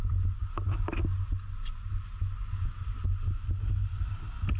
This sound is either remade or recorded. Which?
recorded